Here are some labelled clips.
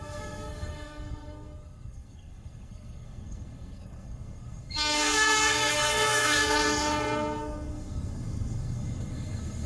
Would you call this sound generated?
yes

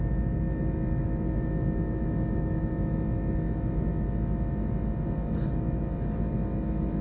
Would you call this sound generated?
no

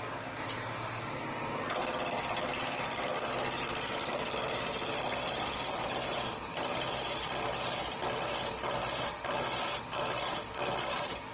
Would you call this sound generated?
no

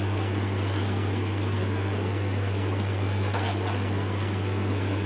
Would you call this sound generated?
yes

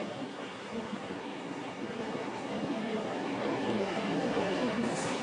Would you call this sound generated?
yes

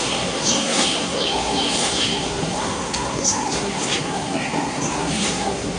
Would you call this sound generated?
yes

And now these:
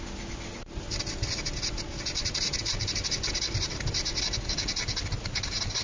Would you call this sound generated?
no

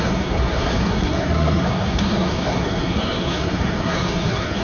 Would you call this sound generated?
yes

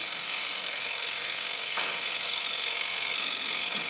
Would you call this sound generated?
yes